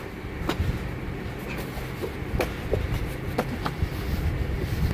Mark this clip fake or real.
real